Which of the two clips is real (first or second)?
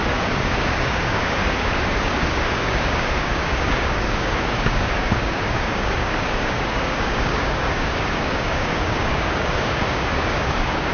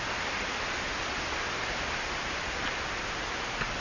second